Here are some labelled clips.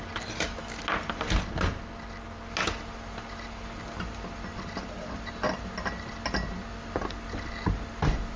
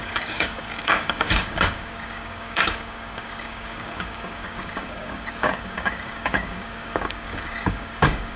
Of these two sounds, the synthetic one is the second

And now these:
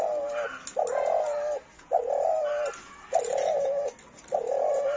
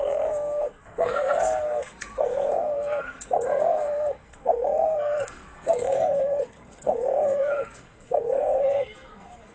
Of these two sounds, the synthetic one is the second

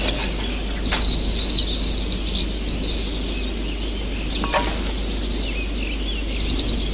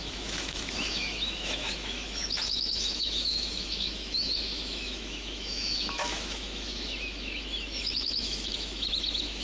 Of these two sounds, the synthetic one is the second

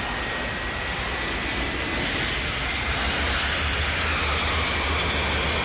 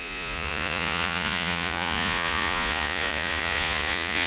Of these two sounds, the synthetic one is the second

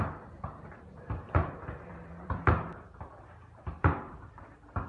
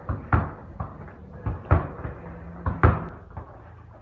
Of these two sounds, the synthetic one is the first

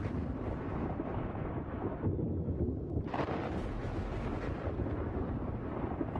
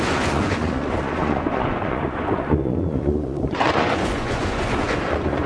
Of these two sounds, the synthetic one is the second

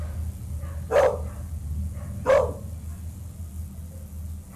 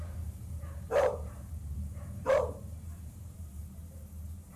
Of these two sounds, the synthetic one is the second